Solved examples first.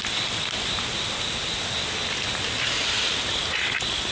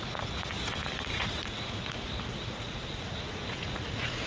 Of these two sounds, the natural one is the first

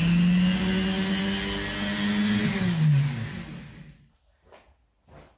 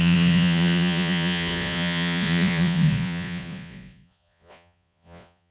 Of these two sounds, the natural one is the first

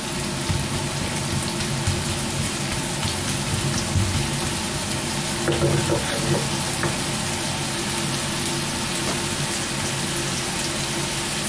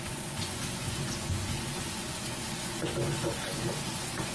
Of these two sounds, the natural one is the first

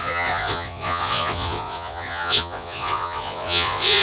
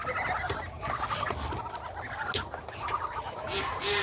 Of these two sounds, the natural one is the second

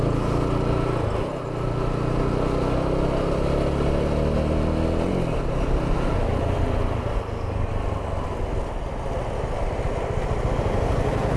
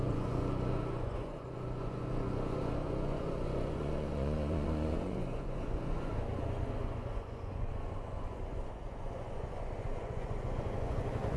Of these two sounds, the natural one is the first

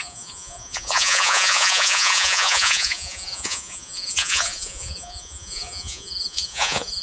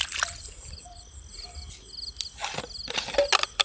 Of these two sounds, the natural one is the second